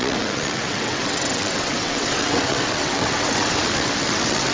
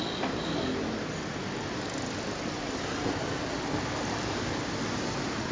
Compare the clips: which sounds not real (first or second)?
first